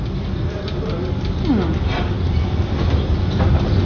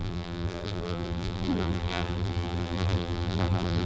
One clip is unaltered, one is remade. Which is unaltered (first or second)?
first